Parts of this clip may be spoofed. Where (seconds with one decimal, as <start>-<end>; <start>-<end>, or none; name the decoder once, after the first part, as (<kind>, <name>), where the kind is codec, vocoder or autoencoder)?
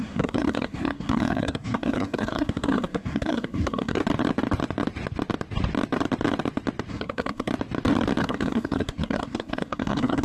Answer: 0.0-4.0 (codec, SNAC); 6.9-7.5; 8.2-10.2